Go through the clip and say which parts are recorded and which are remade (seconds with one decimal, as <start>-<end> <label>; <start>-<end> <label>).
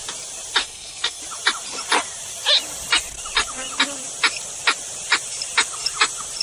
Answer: 0.0-0.6 recorded; 0.6-1.2 remade; 1.2-6.4 recorded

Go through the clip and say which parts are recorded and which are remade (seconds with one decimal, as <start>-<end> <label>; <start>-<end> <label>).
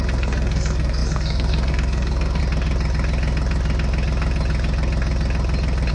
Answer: 0.0-2.4 remade; 2.4-5.9 recorded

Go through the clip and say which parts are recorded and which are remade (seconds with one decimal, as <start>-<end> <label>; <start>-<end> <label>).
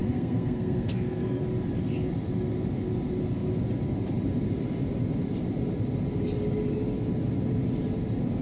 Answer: 0.0-1.4 remade; 1.4-8.4 recorded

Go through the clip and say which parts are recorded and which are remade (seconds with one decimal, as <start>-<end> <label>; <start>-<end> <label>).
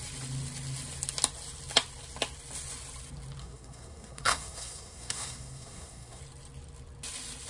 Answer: 0.0-3.4 recorded; 3.4-6.2 remade; 6.2-7.5 recorded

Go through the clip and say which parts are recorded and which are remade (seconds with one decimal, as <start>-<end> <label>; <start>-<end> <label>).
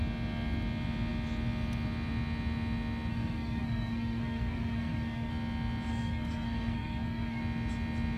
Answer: 0.0-3.1 recorded; 3.1-5.3 remade; 5.3-5.9 recorded; 5.9-7.4 remade; 7.4-8.2 recorded